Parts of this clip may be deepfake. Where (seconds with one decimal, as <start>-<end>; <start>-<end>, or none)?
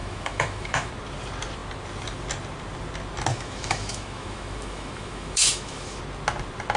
0.0-0.9; 3.3-6.0